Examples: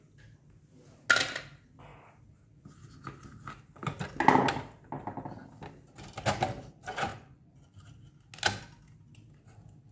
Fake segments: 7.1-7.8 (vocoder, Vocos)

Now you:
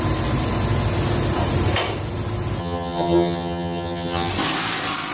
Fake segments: 2.6-4.3 (vocoder, HiFi-GAN)

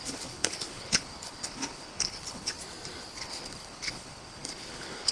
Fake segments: 0.0-2.5 (codec, HILCodec); 3.2-5.1

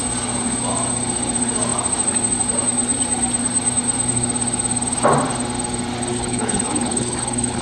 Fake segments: 6.1-7.6 (codec, HILCodec)

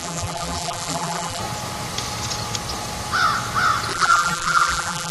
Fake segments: 0.0-1.4 (vocoder, BigVGAN v2); 3.9-5.1

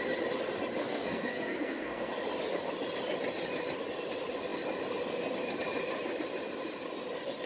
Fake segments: 0.8-2.1 (codec, SNAC)